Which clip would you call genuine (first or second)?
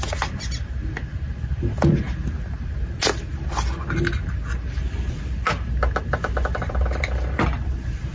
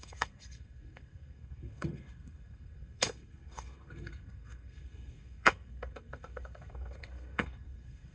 first